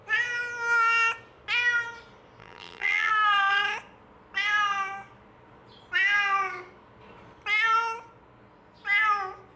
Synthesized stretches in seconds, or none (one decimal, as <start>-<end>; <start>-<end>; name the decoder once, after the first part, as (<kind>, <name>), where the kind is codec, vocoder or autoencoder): 2.4-3.1 (vocoder, BigVGAN v2)

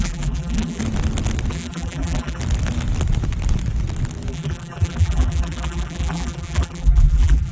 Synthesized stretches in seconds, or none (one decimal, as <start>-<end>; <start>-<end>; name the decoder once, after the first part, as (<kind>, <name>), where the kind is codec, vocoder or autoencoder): 0.0-0.8 (vocoder, BigVGAN v2); 1.5-2.4; 4.3-7.5

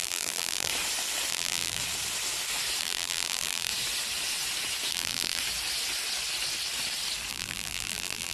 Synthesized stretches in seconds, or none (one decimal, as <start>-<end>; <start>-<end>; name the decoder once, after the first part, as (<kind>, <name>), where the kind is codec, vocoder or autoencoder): 0.0-0.7 (vocoder, BigVGAN v2); 1.3-1.8; 2.8-3.7; 4.9-5.4; 7.3-8.3

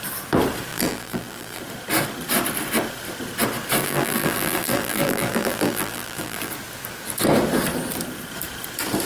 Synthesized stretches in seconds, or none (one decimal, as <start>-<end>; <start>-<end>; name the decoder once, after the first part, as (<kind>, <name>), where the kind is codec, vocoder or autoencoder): 0.7-1.6 (vocoder, BigVGAN v2); 3.8-6.5

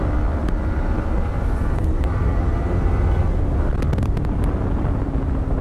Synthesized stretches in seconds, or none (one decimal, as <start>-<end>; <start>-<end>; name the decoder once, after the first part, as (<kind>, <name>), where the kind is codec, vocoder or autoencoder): 0.4-3.2 (vocoder, BigVGAN v2)

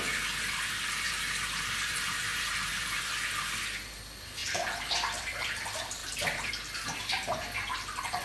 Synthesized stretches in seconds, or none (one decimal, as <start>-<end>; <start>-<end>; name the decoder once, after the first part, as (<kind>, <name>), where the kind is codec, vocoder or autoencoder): 2.3-3.0 (vocoder, BigVGAN v2); 6.0-6.5

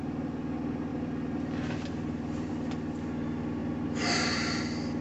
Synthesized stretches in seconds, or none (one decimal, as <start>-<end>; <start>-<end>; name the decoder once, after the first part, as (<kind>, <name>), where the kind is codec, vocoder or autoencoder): 0.9-2.5 (vocoder, BigVGAN v2); 3.6-4.6